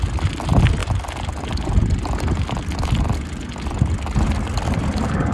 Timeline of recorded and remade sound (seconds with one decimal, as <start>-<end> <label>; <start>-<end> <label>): 0.0-5.3 recorded